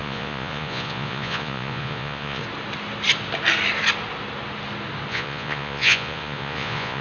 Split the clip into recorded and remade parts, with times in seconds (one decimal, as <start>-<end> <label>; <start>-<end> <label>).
0.0-2.4 remade; 2.4-5.1 recorded; 5.1-7.0 remade